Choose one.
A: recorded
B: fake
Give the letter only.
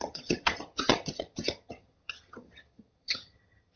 B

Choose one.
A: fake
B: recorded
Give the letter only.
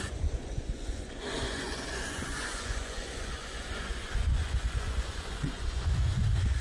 A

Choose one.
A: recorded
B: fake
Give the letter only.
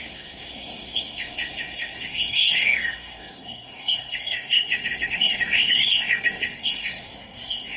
B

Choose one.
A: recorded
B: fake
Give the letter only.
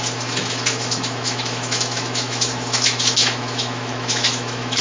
B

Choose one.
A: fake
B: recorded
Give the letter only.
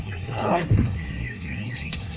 A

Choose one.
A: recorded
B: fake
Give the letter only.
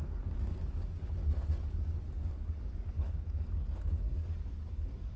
B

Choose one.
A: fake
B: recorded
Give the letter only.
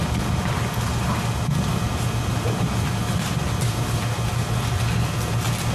B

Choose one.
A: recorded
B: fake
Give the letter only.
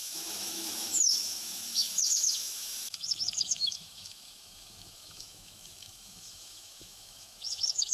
B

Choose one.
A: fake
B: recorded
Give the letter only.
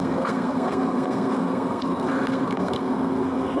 A